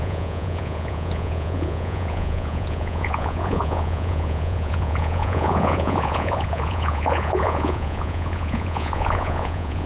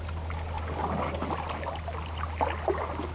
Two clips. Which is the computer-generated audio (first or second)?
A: first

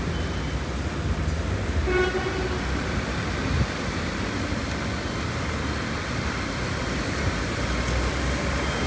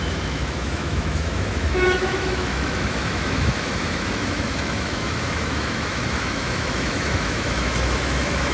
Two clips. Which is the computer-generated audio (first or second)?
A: second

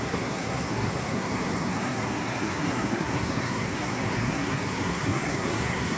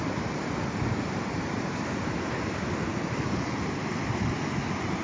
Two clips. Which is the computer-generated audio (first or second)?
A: first